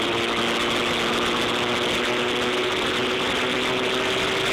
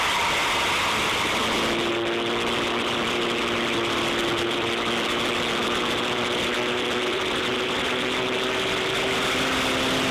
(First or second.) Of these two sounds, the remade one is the second